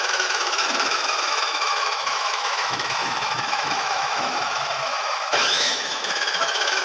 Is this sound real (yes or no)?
no